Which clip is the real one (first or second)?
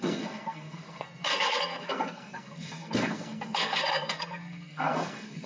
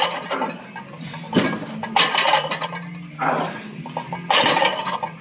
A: second